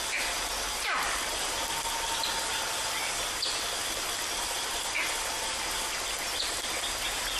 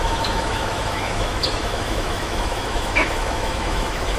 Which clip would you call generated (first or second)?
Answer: second